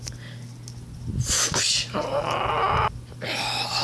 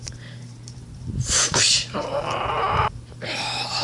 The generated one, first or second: second